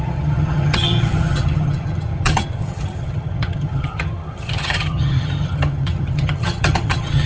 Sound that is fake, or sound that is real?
fake